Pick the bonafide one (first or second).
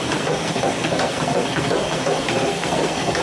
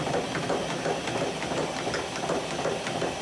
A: second